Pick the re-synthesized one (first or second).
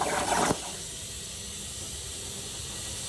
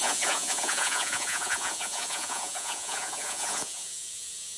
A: second